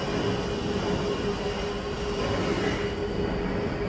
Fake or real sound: real